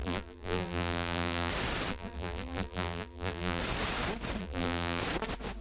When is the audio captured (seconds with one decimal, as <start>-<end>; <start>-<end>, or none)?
1.5-1.9; 3.6-4.4; 5.0-5.6